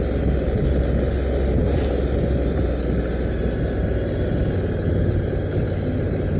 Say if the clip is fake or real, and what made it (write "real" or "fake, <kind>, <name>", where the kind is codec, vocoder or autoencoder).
real